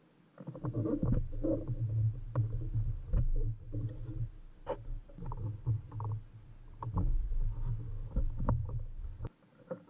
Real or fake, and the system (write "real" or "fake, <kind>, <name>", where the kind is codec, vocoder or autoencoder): real